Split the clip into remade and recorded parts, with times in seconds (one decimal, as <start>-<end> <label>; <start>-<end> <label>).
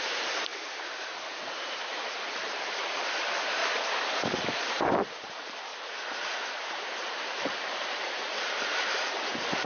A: 0.0-0.5 remade; 0.5-1.5 recorded; 1.5-3.6 remade; 3.6-4.6 recorded; 4.6-5.7 remade; 5.7-6.7 recorded; 6.7-9.7 remade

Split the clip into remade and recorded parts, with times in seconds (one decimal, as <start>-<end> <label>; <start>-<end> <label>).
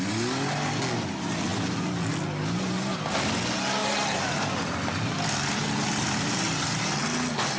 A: 0.0-3.8 recorded; 3.8-6.9 remade; 6.9-7.6 recorded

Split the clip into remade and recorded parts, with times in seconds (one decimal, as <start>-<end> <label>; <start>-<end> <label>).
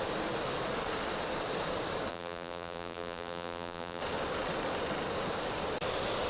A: 0.0-2.1 recorded; 2.1-4.0 remade; 4.0-6.3 recorded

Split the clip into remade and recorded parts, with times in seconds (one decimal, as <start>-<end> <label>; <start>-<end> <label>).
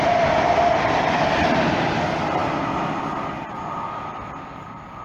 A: 0.0-2.4 remade; 2.4-3.5 recorded; 3.5-5.0 remade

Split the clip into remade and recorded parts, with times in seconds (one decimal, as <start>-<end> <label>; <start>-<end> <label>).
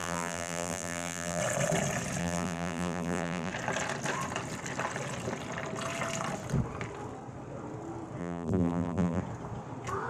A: 0.0-1.4 remade; 1.4-2.2 recorded; 2.2-3.5 remade; 3.5-8.2 recorded; 8.2-9.2 remade; 9.2-10.1 recorded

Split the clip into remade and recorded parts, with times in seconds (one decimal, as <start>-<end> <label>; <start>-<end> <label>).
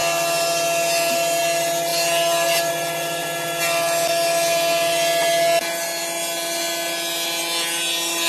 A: 0.0-8.3 recorded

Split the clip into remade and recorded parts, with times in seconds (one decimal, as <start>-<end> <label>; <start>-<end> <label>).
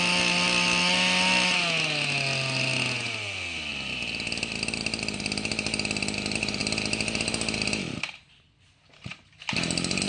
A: 0.0-10.1 recorded